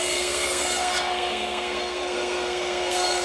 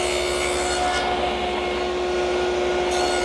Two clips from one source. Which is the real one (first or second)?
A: second